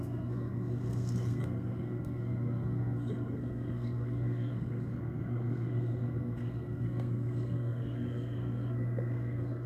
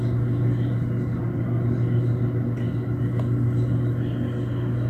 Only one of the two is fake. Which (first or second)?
first